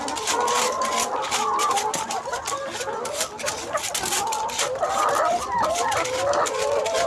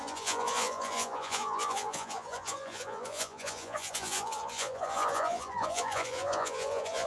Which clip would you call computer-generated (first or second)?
second